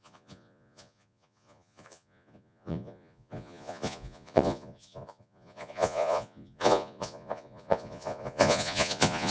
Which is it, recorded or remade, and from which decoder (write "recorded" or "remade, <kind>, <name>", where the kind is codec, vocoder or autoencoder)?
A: remade, vocoder, Vocos